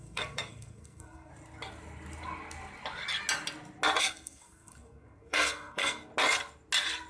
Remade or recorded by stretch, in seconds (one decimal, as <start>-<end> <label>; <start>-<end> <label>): 0.0-1.3 remade; 1.3-4.0 recorded; 4.0-6.1 remade; 6.1-7.1 recorded